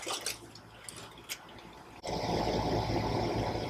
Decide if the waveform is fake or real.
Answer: real